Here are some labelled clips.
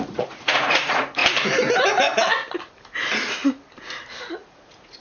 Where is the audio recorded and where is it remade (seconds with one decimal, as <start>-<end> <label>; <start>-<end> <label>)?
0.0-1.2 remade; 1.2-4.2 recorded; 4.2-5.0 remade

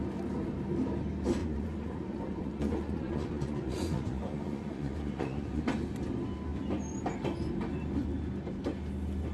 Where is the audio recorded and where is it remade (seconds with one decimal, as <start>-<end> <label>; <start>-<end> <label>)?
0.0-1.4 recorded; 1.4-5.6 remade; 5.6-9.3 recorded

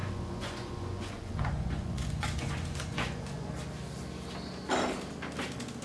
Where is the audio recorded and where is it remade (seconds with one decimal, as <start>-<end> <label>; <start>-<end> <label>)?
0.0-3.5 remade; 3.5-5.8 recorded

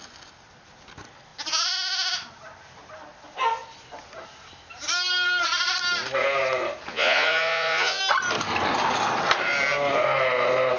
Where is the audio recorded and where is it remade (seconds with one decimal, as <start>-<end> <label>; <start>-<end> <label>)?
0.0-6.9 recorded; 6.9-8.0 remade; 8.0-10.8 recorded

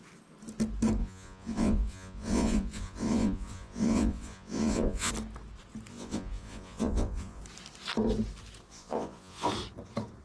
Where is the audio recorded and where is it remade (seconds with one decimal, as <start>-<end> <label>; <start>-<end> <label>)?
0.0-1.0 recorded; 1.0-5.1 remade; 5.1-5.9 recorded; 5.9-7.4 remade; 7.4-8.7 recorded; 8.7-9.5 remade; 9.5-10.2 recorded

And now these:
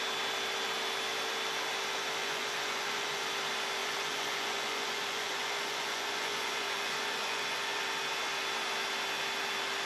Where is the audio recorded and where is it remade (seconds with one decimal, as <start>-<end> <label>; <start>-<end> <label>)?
0.0-2.2 recorded; 2.2-3.2 remade; 3.2-3.8 recorded; 3.8-7.8 remade; 7.8-9.9 recorded

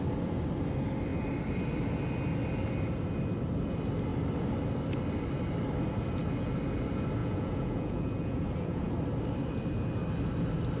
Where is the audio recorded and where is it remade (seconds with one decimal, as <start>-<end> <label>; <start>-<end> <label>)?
0.0-7.2 recorded; 7.2-8.9 remade; 8.9-10.8 recorded

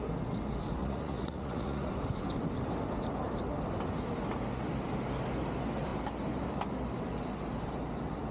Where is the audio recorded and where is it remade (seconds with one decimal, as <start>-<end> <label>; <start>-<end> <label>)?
0.0-0.8 recorded; 0.8-1.9 remade; 1.9-8.3 recorded